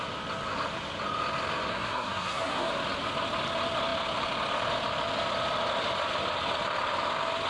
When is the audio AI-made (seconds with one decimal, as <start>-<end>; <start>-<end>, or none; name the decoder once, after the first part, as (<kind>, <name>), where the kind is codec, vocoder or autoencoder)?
1.7-2.7 (codec, SNAC)